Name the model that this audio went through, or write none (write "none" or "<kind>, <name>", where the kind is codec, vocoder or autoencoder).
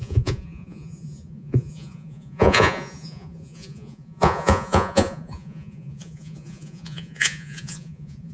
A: vocoder, Vocos